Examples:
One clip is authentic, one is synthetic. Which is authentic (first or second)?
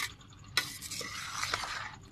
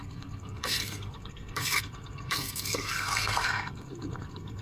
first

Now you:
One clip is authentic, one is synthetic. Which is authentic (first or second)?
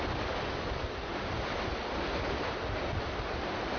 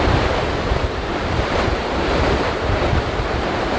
first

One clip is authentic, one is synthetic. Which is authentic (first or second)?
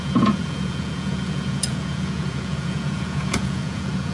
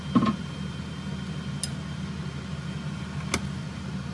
second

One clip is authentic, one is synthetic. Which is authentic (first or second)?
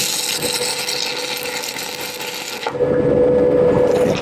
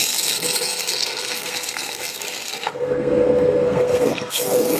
first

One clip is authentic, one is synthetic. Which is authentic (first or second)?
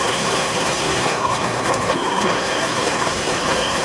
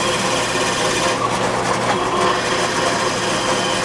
second